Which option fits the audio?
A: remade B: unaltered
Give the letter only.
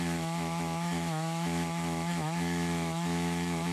A